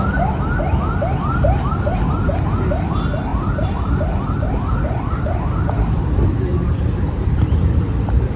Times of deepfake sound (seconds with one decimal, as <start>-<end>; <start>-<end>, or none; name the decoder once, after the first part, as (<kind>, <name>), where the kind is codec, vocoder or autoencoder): 3.3-8.4 (vocoder, BigVGAN v2)